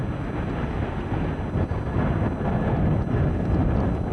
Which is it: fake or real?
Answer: real